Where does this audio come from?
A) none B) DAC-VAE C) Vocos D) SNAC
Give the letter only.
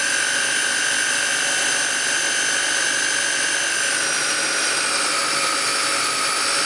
A